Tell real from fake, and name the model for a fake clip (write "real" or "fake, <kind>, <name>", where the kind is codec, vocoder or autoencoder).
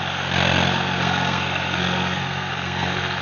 fake, codec, SNAC